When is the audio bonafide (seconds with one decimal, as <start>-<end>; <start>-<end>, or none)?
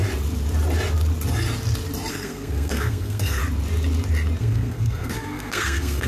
0.0-2.1; 3.4-4.4